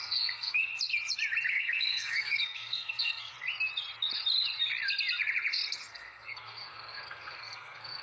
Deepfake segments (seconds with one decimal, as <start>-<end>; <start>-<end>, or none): 0.0-0.7; 1.5-3.3; 5.8-8.0

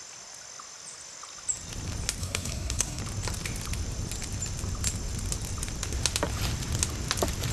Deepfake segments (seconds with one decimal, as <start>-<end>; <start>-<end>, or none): 2.2-3.0

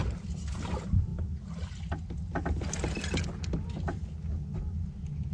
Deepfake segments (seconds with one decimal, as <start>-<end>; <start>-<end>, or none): none